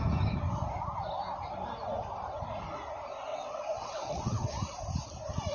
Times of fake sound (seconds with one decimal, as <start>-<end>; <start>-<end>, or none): 3.3-4.5